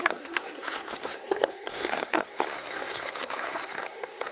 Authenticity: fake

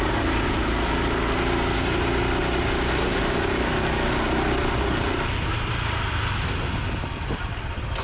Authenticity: real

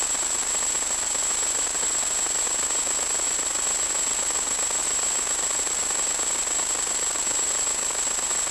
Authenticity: real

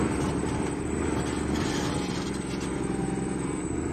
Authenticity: real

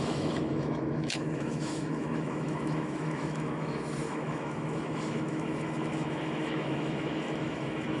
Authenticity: fake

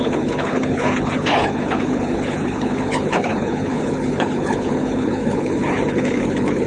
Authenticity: fake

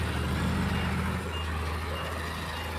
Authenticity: real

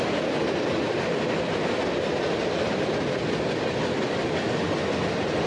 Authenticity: real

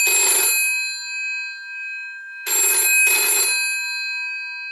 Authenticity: real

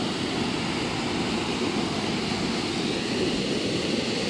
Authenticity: real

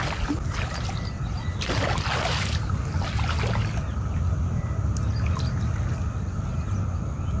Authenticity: real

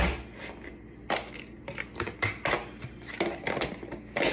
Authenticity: real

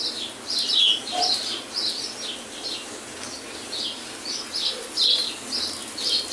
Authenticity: real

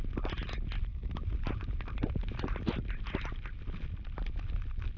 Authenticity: real